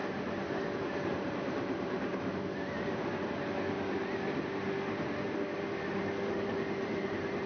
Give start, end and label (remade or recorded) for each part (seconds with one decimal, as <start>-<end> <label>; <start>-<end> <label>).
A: 0.0-1.1 recorded; 1.1-2.1 remade; 2.1-6.5 recorded; 6.5-7.5 remade